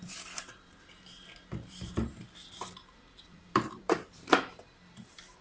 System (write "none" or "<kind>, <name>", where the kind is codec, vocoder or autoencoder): vocoder, BigVGAN v2